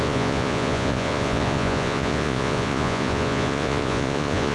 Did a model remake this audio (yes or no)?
yes